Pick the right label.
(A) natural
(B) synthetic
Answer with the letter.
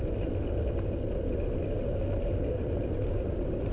A